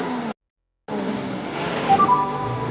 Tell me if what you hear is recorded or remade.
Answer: recorded